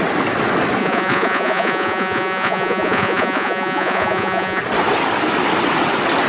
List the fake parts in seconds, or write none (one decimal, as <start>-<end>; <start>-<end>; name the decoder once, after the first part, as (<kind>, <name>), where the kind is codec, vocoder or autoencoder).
0.8-4.6 (vocoder, Vocos)